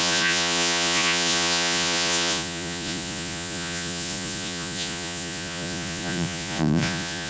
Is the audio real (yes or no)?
no